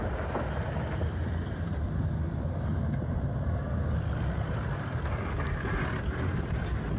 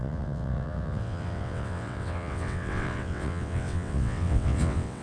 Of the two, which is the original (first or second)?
first